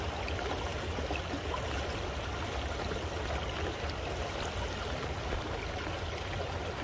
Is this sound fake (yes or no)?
no